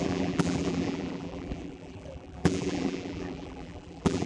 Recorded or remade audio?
remade